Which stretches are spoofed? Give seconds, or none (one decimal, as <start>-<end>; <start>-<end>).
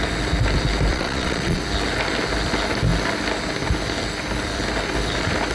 0.9-1.6